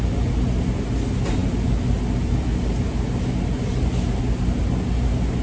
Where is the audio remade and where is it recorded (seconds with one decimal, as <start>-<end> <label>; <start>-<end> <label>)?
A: 0.0-5.4 recorded